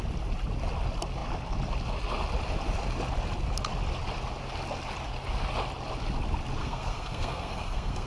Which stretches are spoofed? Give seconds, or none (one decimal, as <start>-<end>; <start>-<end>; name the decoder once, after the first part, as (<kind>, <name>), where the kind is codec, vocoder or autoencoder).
6.6-8.1 (codec, SNAC)